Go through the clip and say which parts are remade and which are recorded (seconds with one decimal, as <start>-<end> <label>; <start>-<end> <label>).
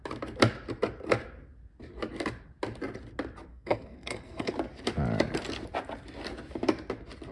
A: 0.0-3.5 recorded; 3.5-4.5 remade; 4.5-7.3 recorded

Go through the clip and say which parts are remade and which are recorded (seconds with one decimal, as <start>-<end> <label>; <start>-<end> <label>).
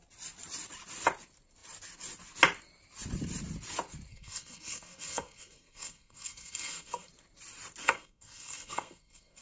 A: 0.0-4.1 recorded; 4.1-7.1 remade; 7.1-7.8 recorded; 7.8-9.4 remade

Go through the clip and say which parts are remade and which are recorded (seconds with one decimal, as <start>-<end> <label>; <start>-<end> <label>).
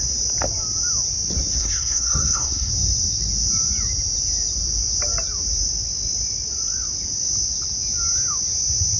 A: 0.0-1.6 recorded; 1.6-2.7 remade; 2.7-9.0 recorded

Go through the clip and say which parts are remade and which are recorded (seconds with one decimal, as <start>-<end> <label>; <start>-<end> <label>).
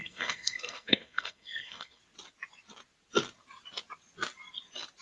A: 0.0-2.0 remade; 2.0-5.0 recorded